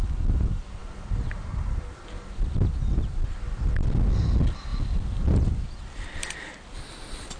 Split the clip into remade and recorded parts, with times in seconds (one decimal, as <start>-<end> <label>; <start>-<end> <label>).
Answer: 0.0-7.4 recorded